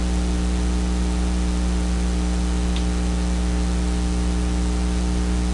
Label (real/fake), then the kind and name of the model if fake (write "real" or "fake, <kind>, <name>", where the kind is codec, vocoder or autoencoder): real